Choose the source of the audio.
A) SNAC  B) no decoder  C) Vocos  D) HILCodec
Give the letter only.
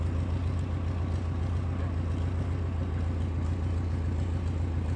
B